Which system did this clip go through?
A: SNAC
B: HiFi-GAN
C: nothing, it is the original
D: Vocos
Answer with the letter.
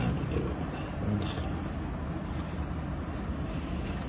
C